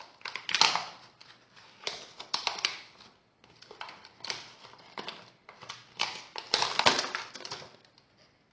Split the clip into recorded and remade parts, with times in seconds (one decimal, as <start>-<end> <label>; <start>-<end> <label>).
0.0-8.5 recorded